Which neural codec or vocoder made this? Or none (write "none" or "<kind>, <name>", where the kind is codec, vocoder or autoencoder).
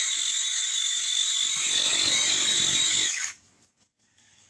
codec, DAC